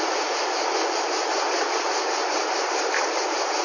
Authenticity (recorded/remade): remade